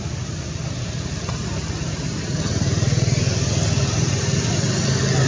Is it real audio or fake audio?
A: real